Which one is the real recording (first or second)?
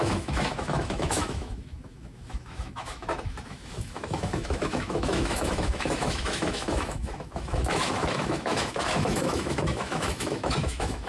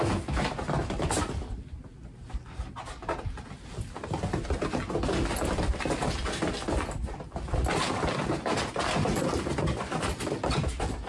second